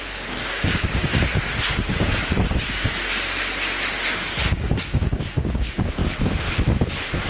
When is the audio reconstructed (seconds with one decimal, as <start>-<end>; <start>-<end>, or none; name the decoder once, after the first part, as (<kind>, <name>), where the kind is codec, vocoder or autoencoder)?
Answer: 0.0-1.1 (codec, DAC); 4.5-6.0